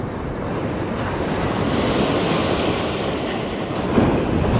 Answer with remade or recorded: recorded